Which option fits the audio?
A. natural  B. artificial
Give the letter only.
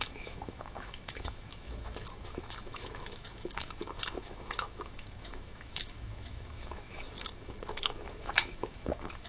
B